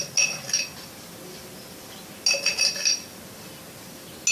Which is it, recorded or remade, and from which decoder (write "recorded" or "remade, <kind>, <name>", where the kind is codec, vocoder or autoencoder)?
recorded